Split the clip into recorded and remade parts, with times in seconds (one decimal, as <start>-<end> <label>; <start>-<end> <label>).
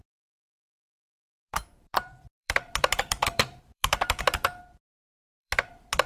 0.0-0.7 recorded; 0.7-4.2 remade; 4.2-4.9 recorded; 4.9-6.1 remade